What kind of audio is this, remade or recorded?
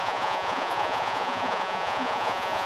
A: remade